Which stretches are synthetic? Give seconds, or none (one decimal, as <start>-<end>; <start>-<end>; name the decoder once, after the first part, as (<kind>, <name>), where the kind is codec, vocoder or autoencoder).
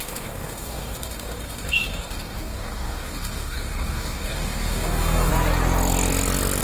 0.0-5.3 (codec, DAC)